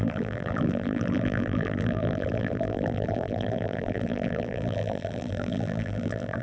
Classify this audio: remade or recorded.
remade